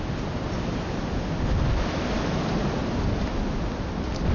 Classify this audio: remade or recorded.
recorded